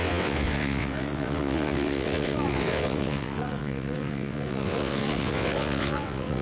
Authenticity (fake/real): fake